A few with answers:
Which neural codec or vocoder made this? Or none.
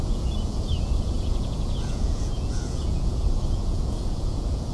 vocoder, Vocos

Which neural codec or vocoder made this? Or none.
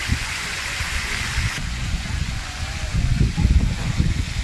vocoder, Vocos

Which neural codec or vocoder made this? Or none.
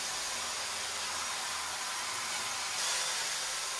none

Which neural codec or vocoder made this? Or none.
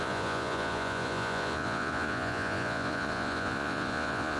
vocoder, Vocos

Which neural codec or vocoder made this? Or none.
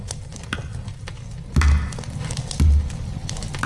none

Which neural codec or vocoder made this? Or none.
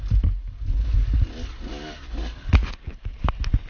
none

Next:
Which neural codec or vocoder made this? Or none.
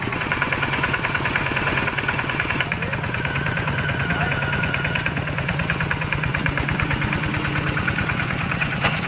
vocoder, Vocos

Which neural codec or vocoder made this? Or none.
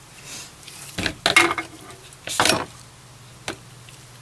none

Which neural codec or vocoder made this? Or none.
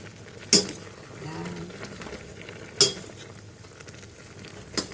none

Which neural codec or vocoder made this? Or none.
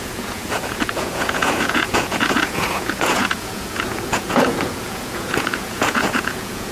vocoder, Vocos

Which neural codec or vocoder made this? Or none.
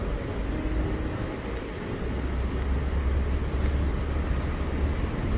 none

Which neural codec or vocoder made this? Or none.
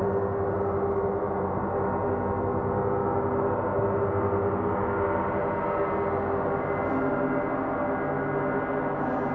none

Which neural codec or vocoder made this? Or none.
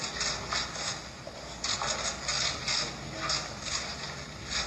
none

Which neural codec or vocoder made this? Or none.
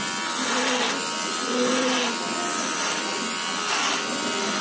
none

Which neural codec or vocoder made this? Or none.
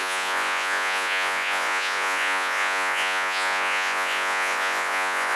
vocoder, Vocos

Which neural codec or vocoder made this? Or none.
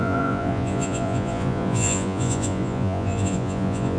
vocoder, Vocos